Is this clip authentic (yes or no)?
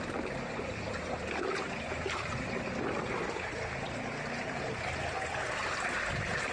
yes